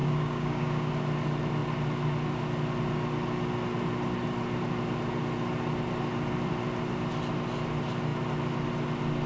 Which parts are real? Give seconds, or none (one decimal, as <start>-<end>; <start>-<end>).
0.9-9.3